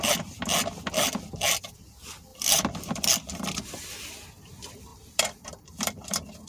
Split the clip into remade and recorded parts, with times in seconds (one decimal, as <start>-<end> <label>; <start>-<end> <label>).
0.0-2.3 recorded; 2.3-3.1 remade; 3.1-4.9 recorded; 4.9-6.1 remade; 6.1-6.5 recorded

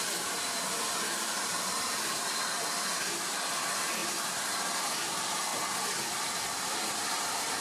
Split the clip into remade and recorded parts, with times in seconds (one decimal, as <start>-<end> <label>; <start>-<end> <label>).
0.0-4.0 remade; 4.0-4.8 recorded; 4.8-5.5 remade; 5.5-6.2 recorded; 6.2-7.6 remade

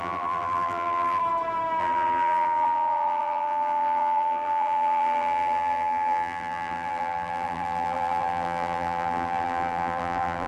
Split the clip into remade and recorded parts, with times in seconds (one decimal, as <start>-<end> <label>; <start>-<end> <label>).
0.0-1.2 remade; 1.2-1.8 recorded; 1.8-10.5 remade

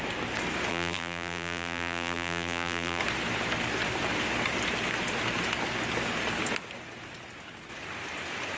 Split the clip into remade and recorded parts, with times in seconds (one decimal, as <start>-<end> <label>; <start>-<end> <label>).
0.0-0.7 recorded; 0.7-3.0 remade; 3.0-8.6 recorded

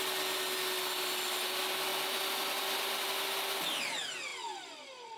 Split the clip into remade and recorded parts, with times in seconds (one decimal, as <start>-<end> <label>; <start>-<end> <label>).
0.0-4.3 recorded; 4.3-5.2 remade